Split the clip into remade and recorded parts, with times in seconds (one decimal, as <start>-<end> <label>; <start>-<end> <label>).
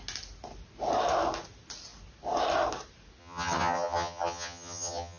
0.0-3.2 recorded; 3.2-5.2 remade